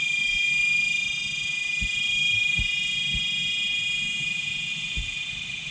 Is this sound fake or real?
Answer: real